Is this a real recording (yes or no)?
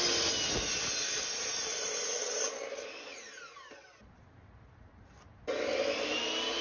yes